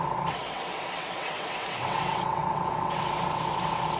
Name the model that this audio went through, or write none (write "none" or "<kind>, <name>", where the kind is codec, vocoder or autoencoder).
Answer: vocoder, WaveNeXt